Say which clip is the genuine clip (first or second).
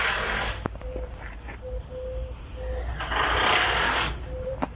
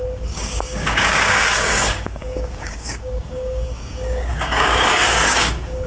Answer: first